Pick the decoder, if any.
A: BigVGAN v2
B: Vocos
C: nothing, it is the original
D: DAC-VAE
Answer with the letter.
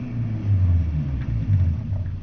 C